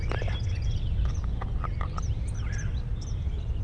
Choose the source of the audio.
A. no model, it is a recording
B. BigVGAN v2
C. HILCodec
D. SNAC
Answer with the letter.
A